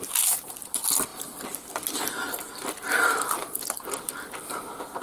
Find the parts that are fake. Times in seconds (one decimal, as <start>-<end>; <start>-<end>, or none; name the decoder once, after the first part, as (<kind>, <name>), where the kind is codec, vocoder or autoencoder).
none